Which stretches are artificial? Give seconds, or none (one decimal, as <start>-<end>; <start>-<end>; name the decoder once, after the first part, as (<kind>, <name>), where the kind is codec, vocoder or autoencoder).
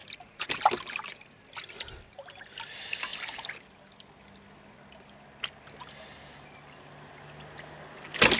0.0-0.6 (vocoder, BigVGAN v2)